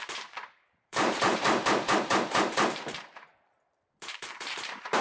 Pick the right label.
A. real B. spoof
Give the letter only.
B